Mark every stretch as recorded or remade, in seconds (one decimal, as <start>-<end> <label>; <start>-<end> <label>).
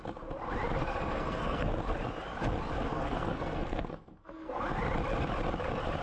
0.0-0.8 recorded; 0.8-1.7 remade; 1.7-2.9 recorded; 2.9-4.6 remade; 4.6-6.0 recorded